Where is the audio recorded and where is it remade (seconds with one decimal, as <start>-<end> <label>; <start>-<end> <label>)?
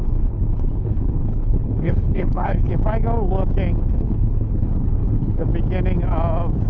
0.0-2.7 remade; 2.7-3.8 recorded; 3.8-5.5 remade; 5.5-6.7 recorded